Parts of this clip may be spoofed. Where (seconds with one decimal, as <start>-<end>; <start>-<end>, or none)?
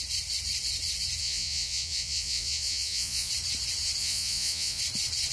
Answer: 1.2-3.3; 4.0-4.8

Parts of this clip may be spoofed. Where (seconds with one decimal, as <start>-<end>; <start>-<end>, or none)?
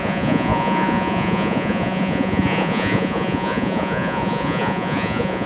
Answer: 0.0-5.5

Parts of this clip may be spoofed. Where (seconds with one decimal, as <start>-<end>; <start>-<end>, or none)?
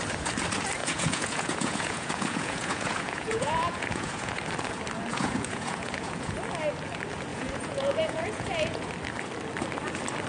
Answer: 0.8-4.4; 5.1-6.4; 7.3-8.8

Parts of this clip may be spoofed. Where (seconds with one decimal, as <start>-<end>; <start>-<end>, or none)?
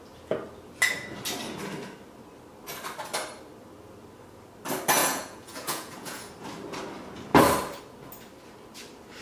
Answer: 5.0-6.3